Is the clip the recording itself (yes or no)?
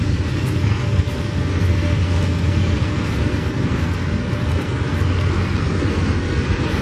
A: no